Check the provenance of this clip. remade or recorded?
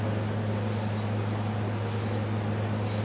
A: recorded